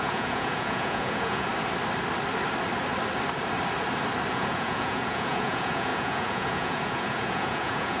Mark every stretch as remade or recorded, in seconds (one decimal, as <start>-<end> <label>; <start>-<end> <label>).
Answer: 0.0-1.5 remade; 1.5-4.3 recorded; 4.3-8.0 remade

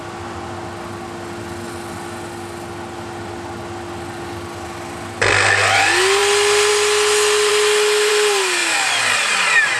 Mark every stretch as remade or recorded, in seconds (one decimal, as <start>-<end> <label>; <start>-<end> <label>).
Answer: 0.0-9.8 recorded

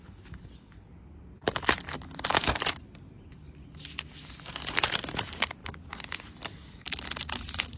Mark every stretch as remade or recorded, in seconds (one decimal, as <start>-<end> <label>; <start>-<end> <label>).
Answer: 0.0-7.8 recorded

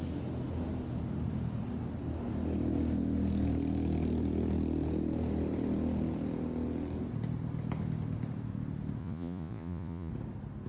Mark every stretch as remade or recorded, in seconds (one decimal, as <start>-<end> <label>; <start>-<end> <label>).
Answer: 0.0-9.0 recorded; 9.0-10.1 remade; 10.1-10.7 recorded